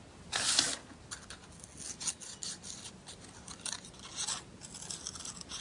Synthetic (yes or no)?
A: no